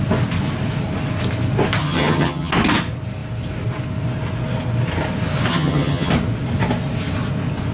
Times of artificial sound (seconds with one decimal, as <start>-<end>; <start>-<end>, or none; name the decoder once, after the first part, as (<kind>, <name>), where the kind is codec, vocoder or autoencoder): 1.8-2.5 (vocoder, HiFi-GAN); 5.5-6.1